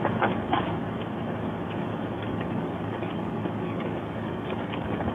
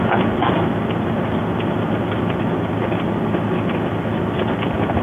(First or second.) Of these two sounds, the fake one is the first